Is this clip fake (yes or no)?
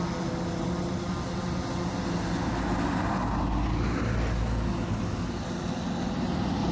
no